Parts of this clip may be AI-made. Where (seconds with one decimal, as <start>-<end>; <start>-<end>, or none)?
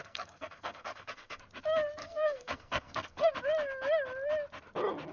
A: 0.0-1.4; 2.0-3.3